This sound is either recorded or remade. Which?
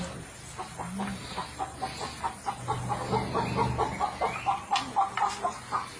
recorded